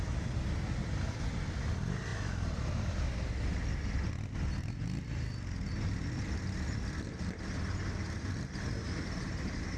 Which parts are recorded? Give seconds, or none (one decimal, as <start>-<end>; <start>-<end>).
0.0-9.8